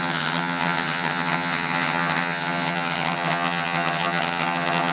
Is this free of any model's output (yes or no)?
no